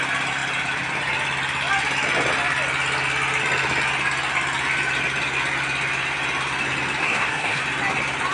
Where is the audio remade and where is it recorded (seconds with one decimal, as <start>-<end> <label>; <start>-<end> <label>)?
0.0-7.0 recorded; 7.0-7.6 remade; 7.6-8.3 recorded